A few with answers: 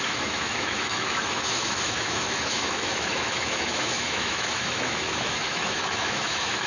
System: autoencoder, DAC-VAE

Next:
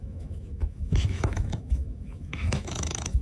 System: autoencoder, DAC-VAE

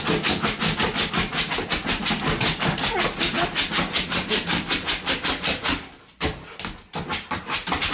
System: none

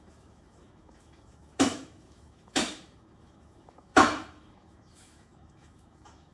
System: autoencoder, DAC-VAE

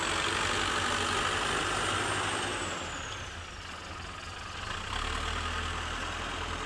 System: none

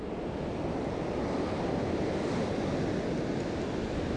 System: none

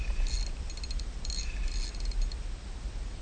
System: none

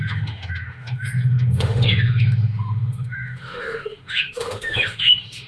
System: autoencoder, DAC-VAE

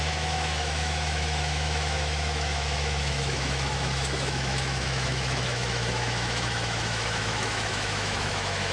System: autoencoder, DAC-VAE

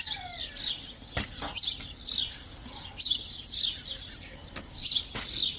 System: none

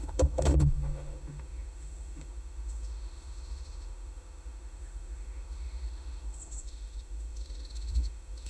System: autoencoder, DAC-VAE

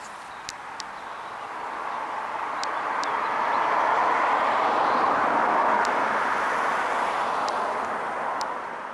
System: none